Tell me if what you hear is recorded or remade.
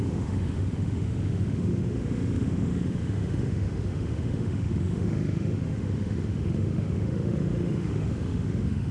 remade